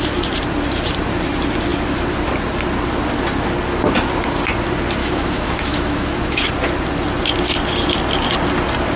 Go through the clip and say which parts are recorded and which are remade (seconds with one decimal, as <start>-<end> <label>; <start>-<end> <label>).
0.0-5.0 recorded; 5.0-6.5 remade; 6.5-9.0 recorded